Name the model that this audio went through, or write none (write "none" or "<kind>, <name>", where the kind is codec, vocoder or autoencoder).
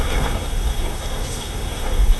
codec, SNAC